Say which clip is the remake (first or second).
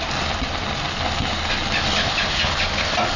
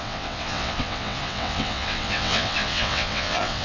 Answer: second